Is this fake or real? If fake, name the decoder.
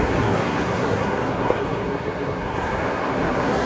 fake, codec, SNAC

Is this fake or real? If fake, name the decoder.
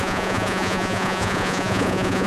fake, vocoder, Vocos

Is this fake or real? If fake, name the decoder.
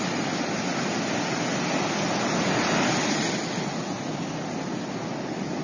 real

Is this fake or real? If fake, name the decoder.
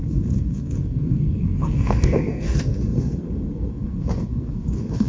fake, codec, SNAC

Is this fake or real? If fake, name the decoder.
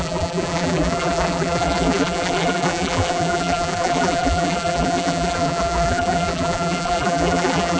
fake, vocoder, BigVGAN v2